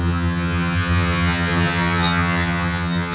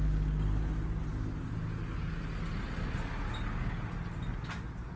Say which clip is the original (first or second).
second